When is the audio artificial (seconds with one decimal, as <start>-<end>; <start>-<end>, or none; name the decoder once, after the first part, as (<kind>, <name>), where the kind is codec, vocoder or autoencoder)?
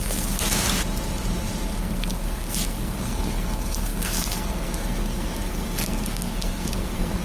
0.0-0.5 (codec, SNAC); 1.8-7.2